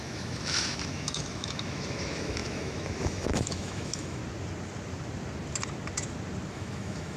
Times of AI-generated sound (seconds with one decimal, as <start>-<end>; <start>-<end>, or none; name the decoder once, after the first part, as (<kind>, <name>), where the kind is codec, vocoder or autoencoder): 0.0-4.2 (autoencoder, DAC-VAE); 6.5-7.2